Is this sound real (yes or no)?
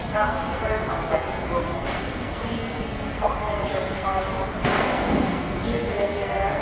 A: no